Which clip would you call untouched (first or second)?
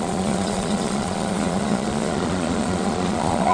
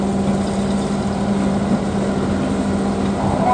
second